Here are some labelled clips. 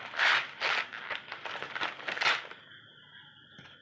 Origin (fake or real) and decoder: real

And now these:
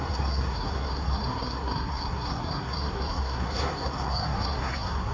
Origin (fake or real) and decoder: fake, codec, SNAC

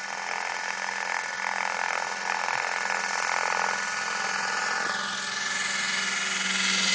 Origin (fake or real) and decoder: real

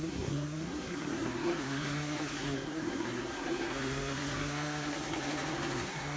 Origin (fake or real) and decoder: fake, codec, SNAC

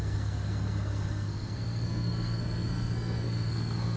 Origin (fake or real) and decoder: fake, codec, SNAC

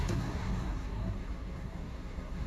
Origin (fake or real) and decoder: fake, codec, SNAC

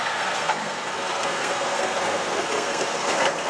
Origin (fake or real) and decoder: fake, codec, SNAC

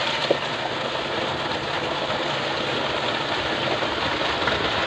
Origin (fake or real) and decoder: real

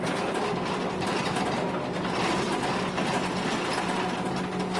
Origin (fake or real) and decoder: real